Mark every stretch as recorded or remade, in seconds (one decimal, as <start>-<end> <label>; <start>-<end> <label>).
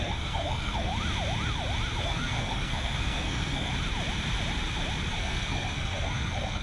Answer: 0.0-0.9 remade; 0.9-2.0 recorded; 2.0-3.7 remade; 3.7-5.1 recorded; 5.1-6.6 remade